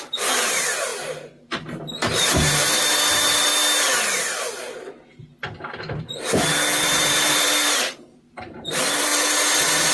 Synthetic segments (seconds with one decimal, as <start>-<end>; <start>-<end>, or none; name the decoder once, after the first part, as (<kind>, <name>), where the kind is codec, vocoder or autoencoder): 0.0-0.9 (vocoder, BigVGAN v2); 2.3-3.5; 6.8-9.9